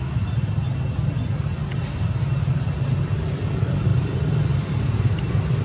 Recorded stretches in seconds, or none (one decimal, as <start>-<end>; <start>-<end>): 0.0-5.6